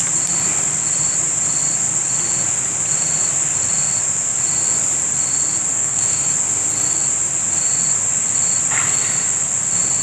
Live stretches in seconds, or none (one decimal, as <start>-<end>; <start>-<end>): 0.0-5.7; 6.3-10.0